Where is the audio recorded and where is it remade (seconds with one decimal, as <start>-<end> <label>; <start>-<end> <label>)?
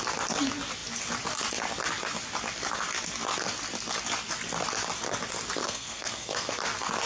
0.0-5.6 recorded; 5.6-6.5 remade; 6.5-7.1 recorded